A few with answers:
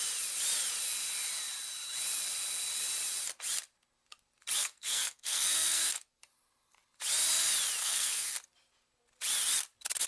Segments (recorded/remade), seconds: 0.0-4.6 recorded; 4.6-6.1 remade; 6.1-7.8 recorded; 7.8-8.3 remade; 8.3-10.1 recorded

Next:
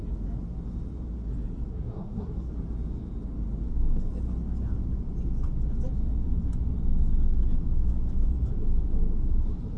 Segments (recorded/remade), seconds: 0.0-1.7 recorded; 1.7-2.5 remade; 2.5-9.8 recorded

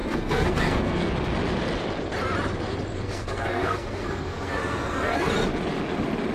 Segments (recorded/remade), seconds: 0.0-1.1 remade; 1.1-2.9 recorded; 2.9-5.3 remade; 5.3-6.3 recorded